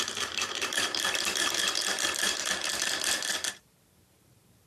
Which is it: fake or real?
fake